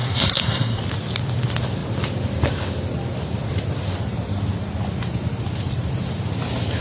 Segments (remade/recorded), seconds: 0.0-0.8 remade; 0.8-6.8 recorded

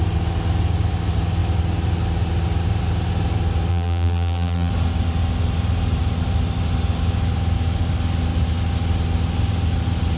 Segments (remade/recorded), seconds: 0.0-3.7 recorded; 3.7-4.7 remade; 4.7-10.2 recorded